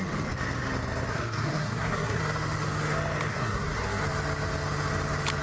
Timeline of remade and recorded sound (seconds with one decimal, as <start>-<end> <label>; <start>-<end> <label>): 0.0-1.1 recorded; 1.1-2.2 remade; 2.2-3.3 recorded; 3.3-4.0 remade; 4.0-5.4 recorded